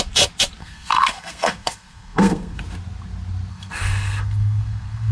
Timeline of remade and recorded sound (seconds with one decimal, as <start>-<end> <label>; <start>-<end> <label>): 0.0-0.6 recorded; 0.6-2.6 remade; 2.6-3.5 recorded; 3.5-5.1 remade